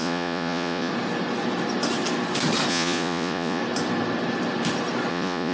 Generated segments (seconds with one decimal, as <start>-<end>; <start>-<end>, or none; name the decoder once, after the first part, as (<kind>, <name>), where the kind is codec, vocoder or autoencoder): 0.0-0.9 (vocoder, Vocos); 2.7-3.6; 5.1-5.5

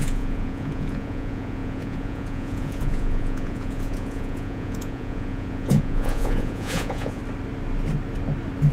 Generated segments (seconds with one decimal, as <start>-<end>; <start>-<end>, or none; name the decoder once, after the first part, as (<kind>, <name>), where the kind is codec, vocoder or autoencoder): 0.0-7.2 (vocoder, Vocos)